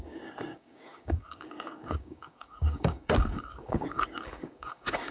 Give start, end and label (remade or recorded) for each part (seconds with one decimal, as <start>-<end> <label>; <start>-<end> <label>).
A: 0.0-5.1 remade